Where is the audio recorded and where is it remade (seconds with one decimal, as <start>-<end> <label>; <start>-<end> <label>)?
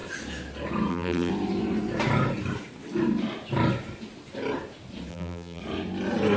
0.0-0.9 recorded; 0.9-1.3 remade; 1.3-5.1 recorded; 5.1-5.6 remade; 5.6-6.4 recorded